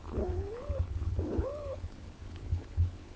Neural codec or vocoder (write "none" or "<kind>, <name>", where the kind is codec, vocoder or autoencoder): codec, HILCodec